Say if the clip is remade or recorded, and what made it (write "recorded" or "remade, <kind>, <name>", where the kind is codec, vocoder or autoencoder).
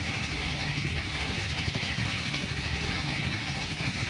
remade, codec, SNAC